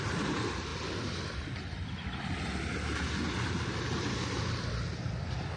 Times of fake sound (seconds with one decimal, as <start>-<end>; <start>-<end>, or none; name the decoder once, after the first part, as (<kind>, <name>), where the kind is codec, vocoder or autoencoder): none